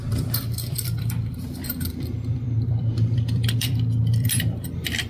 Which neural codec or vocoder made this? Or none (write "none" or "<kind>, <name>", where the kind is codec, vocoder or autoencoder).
vocoder, BigVGAN v2